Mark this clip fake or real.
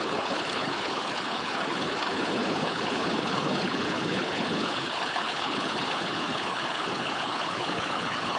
fake